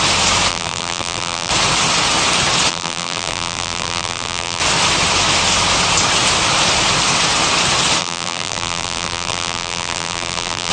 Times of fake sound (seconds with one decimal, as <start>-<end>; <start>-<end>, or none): 0.5-1.5; 2.7-4.6; 8.0-10.7